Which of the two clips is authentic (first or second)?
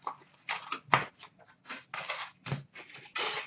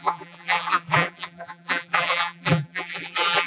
first